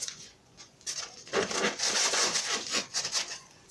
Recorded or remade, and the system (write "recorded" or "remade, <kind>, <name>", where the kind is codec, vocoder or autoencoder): remade, vocoder, Vocos